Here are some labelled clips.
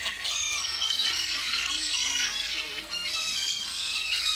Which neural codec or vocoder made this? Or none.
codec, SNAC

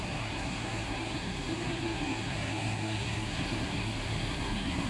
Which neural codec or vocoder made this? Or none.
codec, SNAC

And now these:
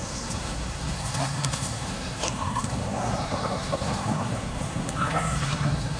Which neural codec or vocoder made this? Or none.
codec, SNAC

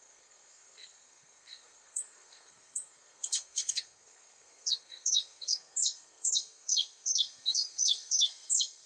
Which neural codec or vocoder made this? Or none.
codec, SNAC